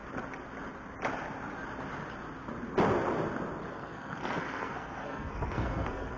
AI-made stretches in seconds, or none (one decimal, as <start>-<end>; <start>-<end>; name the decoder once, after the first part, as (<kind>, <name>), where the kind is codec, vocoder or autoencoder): 3.7-6.2 (codec, SNAC)